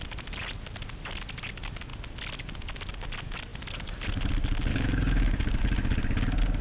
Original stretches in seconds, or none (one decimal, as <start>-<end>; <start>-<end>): 0.0-4.7; 5.6-6.6